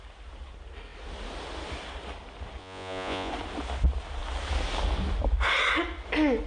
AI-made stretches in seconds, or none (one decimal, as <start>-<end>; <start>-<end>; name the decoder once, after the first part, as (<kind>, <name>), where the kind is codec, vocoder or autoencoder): 2.6-3.3 (vocoder, Vocos)